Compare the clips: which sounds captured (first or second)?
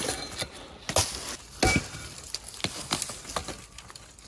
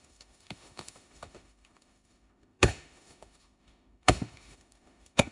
first